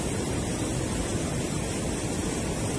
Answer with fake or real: real